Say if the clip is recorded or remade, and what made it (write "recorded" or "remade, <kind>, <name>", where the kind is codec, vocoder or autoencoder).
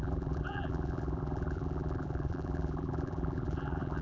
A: remade, vocoder, BigVGAN v2